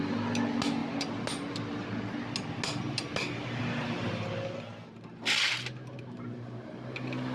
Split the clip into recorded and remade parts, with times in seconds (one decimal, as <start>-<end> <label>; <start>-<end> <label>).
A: 0.0-7.3 recorded